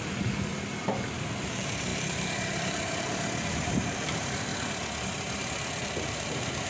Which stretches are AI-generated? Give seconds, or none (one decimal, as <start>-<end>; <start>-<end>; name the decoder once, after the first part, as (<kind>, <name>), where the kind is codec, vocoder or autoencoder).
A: 0.0-0.5 (vocoder, BigVGAN v2); 1.4-4.5; 5.7-6.7